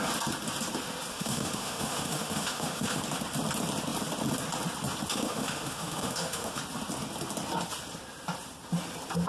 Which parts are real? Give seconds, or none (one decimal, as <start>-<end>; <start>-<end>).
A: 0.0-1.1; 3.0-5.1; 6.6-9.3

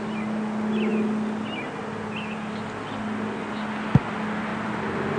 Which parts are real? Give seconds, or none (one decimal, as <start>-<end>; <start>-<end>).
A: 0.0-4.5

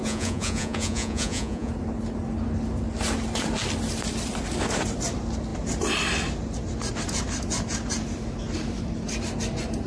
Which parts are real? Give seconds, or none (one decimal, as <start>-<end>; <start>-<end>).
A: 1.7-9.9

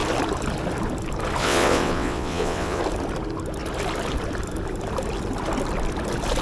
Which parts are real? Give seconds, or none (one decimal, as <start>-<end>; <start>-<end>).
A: 0.0-1.4; 2.8-6.4

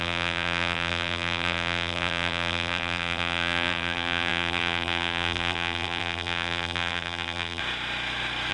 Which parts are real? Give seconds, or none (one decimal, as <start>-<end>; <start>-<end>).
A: 7.6-8.5

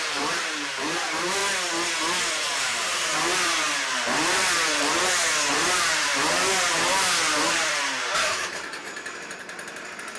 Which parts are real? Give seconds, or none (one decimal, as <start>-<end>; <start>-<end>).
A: 1.4-2.3

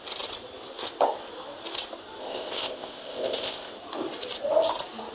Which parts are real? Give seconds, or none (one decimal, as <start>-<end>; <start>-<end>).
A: 0.0-2.2; 3.7-5.1